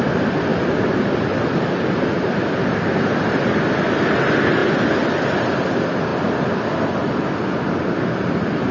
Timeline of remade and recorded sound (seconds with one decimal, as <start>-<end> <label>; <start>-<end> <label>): 0.0-0.5 recorded; 0.5-1.9 remade; 1.9-6.1 recorded; 6.1-7.1 remade; 7.1-8.7 recorded